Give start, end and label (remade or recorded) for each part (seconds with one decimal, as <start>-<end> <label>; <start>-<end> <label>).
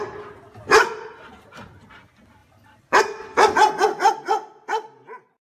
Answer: 0.0-2.4 recorded; 2.4-3.0 remade; 3.0-5.4 recorded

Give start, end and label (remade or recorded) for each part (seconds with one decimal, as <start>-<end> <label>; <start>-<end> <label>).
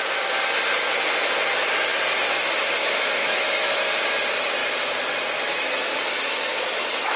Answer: 0.0-2.8 recorded; 2.8-4.0 remade; 4.0-7.2 recorded